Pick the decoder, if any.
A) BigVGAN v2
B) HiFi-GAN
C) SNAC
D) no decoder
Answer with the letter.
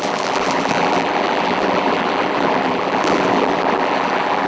A